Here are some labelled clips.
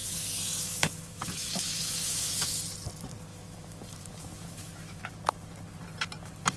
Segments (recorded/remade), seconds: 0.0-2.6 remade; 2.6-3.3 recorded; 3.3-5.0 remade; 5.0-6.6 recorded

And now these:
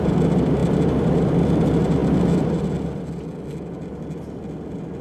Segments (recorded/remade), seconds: 0.0-5.0 recorded

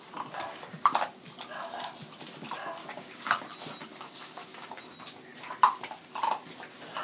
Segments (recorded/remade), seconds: 0.0-2.8 recorded; 2.8-3.4 remade; 3.4-3.9 recorded; 3.9-4.8 remade; 4.8-7.0 recorded

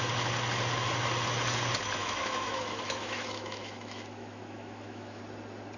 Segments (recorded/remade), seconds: 0.0-2.0 recorded; 2.0-5.2 remade; 5.2-5.8 recorded

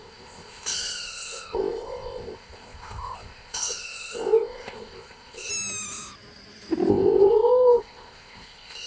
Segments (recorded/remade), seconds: 0.0-5.5 remade; 5.5-6.9 recorded; 6.9-8.9 remade

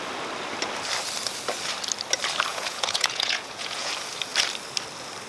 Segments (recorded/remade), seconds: 0.0-2.5 recorded; 2.5-3.9 remade; 3.9-5.3 recorded

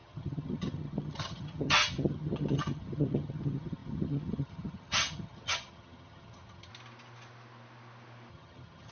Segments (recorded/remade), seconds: 0.0-6.7 remade; 6.7-8.3 recorded; 8.3-8.9 remade